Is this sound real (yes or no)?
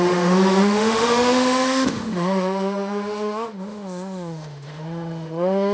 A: no